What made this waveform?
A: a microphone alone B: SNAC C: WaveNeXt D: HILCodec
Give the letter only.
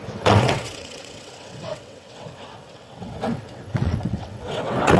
C